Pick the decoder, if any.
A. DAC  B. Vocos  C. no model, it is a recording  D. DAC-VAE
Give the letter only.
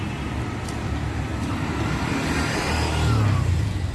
C